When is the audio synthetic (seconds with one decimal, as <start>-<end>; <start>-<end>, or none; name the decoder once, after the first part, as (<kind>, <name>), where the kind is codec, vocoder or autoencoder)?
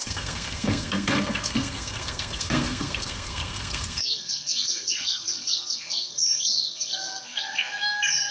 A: 0.0-8.3 (codec, SNAC)